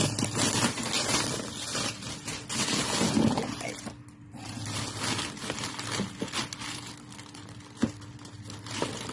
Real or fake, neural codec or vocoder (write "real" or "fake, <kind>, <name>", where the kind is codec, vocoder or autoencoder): real